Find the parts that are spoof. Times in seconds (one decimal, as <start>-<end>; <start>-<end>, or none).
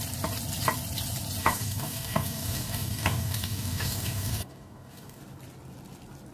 1.4-5.2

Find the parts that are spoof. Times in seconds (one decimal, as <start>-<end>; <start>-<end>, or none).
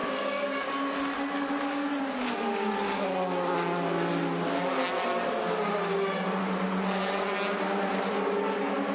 0.0-0.7